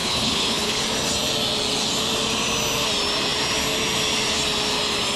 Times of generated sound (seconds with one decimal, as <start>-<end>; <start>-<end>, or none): 0.0-0.8